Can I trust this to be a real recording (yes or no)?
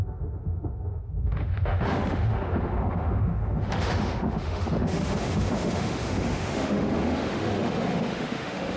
no